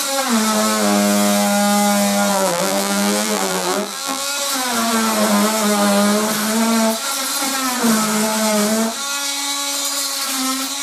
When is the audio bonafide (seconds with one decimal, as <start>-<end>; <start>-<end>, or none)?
0.0-2.3; 4.3-10.8

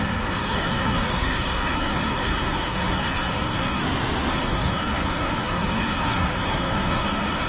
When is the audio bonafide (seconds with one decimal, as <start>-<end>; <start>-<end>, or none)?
3.8-4.3

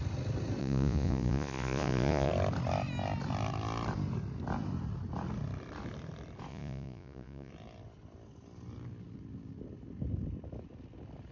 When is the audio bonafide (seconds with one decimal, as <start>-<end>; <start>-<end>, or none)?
0.0-0.6; 2.3-6.5; 7.5-11.3